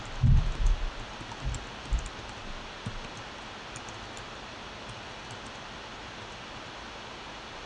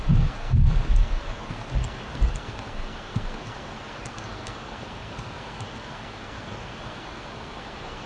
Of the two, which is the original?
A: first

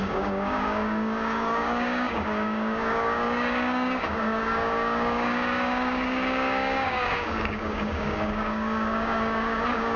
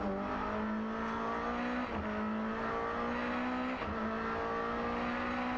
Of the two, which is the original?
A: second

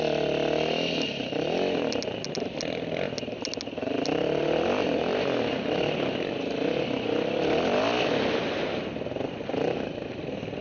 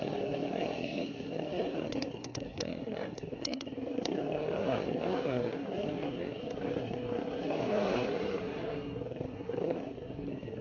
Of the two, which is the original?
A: first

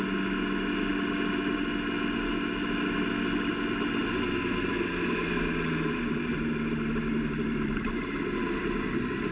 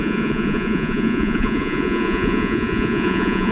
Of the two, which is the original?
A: first